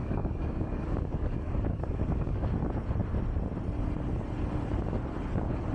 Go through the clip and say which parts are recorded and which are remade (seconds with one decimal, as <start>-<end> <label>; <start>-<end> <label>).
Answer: 0.0-2.5 remade; 2.5-5.7 recorded